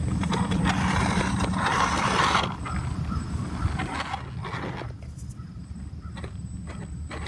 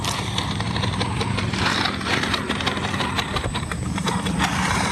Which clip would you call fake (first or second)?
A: second